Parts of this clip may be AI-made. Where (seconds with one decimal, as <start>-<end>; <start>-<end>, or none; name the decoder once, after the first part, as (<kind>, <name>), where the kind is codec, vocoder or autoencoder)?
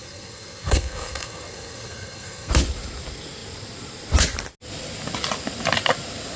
0.0-2.5 (codec, SNAC)